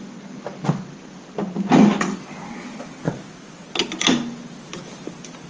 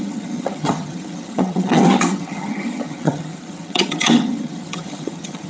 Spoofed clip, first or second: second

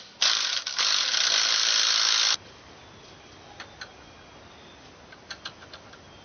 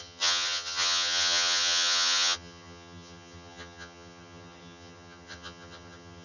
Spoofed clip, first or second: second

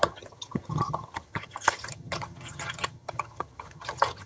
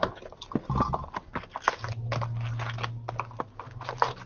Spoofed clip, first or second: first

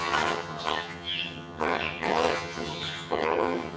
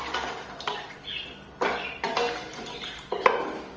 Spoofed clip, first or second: first